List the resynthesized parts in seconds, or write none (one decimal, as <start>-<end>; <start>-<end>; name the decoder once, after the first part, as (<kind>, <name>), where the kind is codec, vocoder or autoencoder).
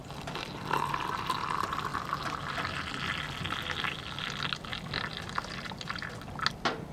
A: none